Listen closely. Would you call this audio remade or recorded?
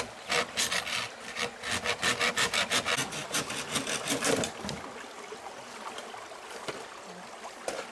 recorded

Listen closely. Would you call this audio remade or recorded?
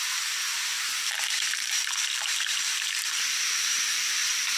remade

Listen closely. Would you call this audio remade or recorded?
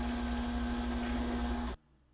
recorded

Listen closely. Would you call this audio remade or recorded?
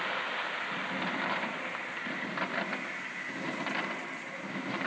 recorded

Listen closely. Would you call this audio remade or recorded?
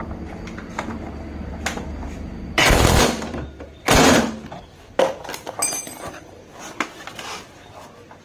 remade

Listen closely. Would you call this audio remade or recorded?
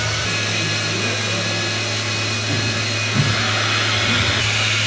recorded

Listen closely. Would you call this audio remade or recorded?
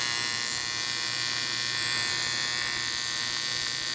remade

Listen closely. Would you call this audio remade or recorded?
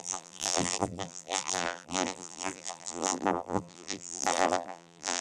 remade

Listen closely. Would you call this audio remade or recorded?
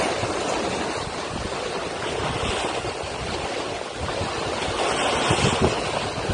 recorded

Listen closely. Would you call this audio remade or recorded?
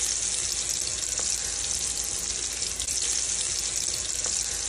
recorded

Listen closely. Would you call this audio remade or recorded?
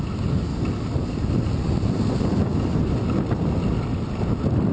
recorded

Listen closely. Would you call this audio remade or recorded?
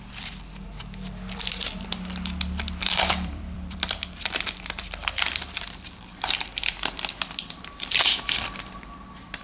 remade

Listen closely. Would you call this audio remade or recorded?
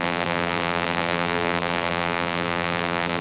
remade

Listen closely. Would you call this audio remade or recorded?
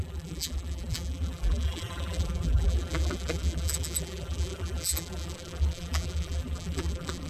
remade